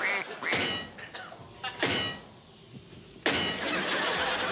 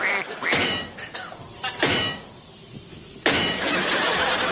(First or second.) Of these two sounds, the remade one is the second